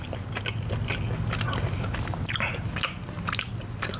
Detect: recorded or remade recorded